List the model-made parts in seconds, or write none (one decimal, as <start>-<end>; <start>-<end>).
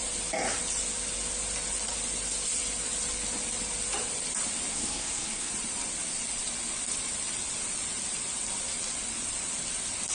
4.7-5.5